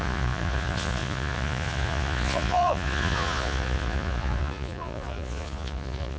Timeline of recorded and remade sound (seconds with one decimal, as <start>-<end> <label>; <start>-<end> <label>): 0.0-6.2 remade